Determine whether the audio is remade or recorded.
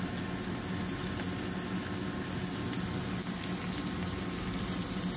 recorded